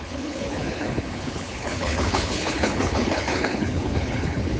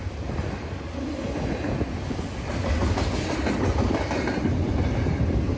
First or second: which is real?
second